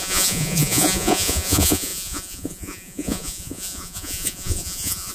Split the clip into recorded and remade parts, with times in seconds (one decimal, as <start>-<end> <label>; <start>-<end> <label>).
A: 0.0-5.1 remade